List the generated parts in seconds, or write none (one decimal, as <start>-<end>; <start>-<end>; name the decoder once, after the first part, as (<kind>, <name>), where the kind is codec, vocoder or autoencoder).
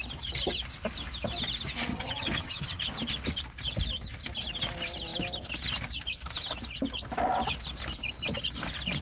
1.9-2.8 (vocoder, HiFi-GAN)